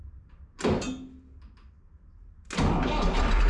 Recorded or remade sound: recorded